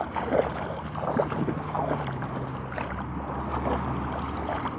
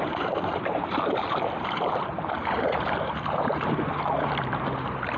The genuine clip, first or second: first